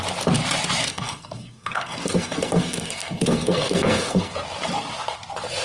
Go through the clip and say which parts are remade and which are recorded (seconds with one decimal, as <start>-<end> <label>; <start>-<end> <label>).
0.0-0.9 recorded; 0.9-4.3 remade; 4.3-5.6 recorded